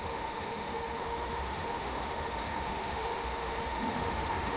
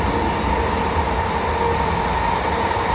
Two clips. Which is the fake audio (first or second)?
first